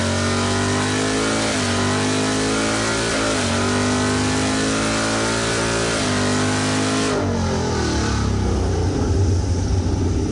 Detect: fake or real real